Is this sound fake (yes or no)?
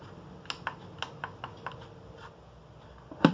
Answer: no